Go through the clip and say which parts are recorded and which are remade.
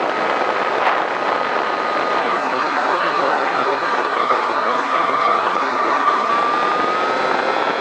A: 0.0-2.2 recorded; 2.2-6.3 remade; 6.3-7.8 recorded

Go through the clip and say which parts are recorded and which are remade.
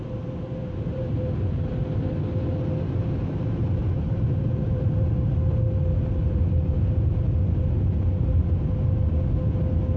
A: 0.0-0.6 recorded; 0.6-1.6 remade; 1.6-3.8 recorded; 3.8-5.5 remade; 5.5-10.0 recorded